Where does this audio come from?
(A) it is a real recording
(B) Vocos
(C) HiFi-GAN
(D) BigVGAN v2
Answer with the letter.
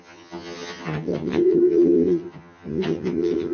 C